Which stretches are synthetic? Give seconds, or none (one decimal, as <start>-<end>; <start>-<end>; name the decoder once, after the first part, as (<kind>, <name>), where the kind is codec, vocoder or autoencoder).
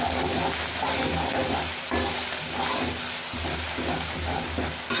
0.0-5.0 (vocoder, BigVGAN v2)